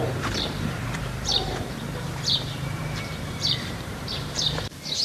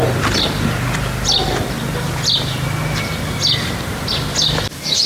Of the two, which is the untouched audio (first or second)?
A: second